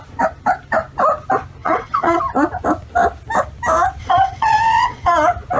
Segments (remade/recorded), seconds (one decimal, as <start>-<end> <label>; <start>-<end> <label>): 0.0-1.6 recorded; 1.6-2.2 remade; 2.2-4.0 recorded; 4.0-5.1 remade; 5.1-5.6 recorded